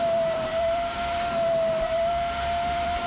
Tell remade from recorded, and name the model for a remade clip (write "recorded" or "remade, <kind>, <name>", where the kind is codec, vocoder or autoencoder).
remade, vocoder, BigVGAN v2